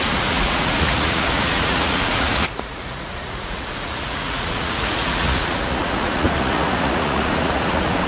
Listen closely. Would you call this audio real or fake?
fake